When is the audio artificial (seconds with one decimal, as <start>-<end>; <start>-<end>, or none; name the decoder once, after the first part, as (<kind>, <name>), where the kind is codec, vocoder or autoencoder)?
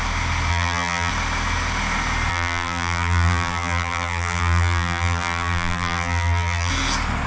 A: 0.5-1.1 (vocoder, BigVGAN v2); 2.3-6.7